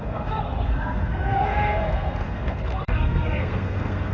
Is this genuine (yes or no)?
no